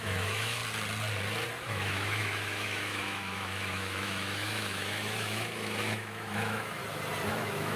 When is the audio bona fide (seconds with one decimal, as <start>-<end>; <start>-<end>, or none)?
0.6-1.6; 6.8-7.3